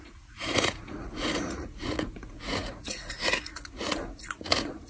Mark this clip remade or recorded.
remade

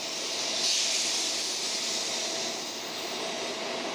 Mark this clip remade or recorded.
recorded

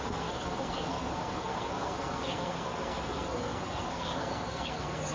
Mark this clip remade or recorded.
remade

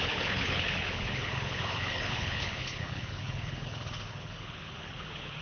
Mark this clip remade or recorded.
remade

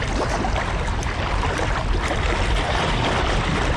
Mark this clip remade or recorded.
remade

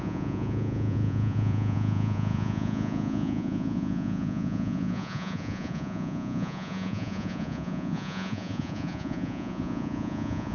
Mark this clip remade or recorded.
remade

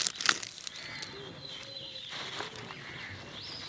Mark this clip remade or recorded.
recorded